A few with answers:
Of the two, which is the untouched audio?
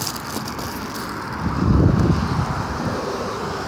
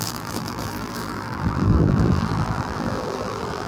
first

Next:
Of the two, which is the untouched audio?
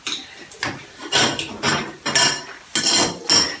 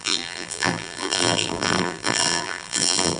first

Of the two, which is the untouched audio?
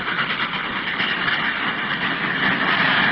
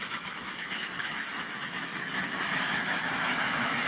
first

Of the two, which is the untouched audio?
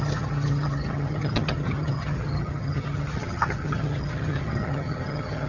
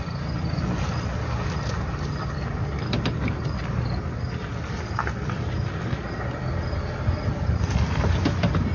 second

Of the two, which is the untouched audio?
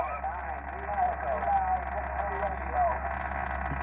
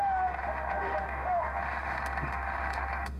first